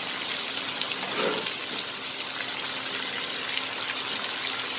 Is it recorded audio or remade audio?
recorded